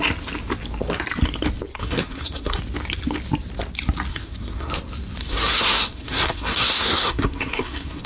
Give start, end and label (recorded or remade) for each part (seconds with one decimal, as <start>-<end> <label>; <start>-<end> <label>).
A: 0.0-1.7 recorded; 1.7-2.6 remade; 2.6-4.1 recorded; 4.1-4.7 remade; 4.7-5.2 recorded; 5.2-8.1 remade